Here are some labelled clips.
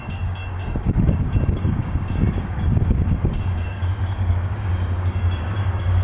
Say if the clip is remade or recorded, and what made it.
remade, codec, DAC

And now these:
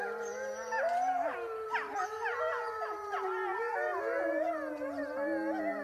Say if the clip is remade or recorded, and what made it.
recorded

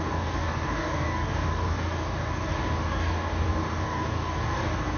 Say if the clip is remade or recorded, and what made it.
remade, codec, DAC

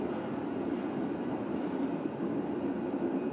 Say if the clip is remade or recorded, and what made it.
recorded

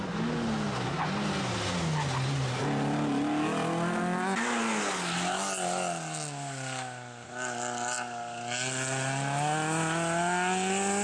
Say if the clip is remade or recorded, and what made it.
recorded